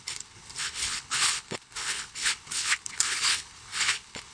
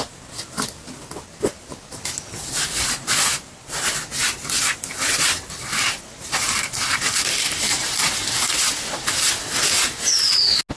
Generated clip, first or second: first